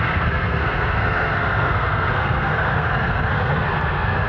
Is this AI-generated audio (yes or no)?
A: yes